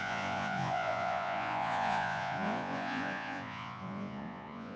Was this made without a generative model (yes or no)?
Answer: no